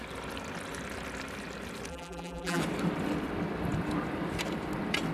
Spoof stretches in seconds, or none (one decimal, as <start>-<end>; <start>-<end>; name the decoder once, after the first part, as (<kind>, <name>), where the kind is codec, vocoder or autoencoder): 1.9-2.6 (vocoder, BigVGAN v2)